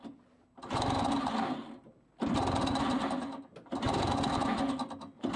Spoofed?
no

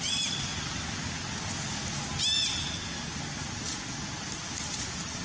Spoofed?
no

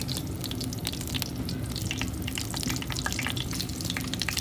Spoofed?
no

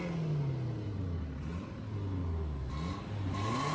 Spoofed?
no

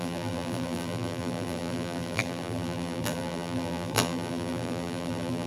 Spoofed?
yes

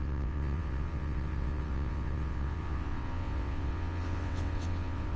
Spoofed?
yes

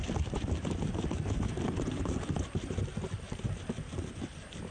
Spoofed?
no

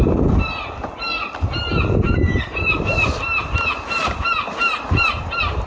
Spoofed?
no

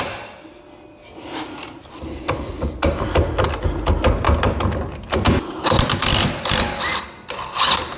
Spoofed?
no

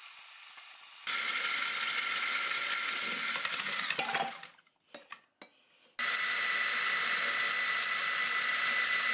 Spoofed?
no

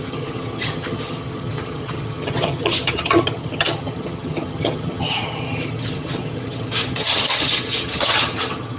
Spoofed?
yes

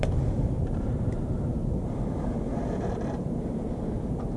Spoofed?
yes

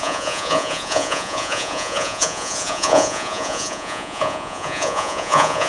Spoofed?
yes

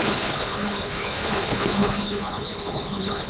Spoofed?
yes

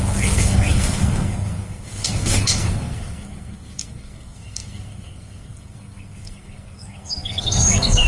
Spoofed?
yes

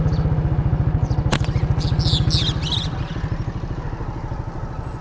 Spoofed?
no